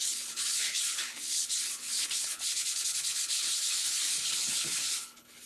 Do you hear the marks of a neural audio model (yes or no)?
yes